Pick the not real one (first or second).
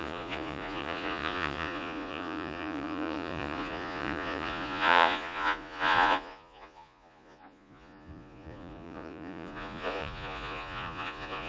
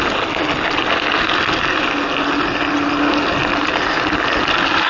first